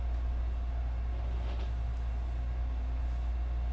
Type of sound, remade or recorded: recorded